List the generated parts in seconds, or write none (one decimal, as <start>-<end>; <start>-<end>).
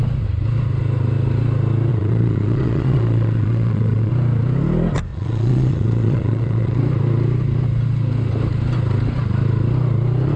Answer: 1.9-4.1; 5.1-6.8